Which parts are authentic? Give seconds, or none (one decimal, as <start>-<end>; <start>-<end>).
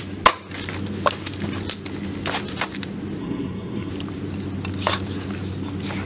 0.0-3.2; 3.9-6.1